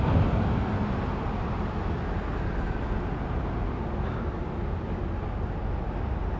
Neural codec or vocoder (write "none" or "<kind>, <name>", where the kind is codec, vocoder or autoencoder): none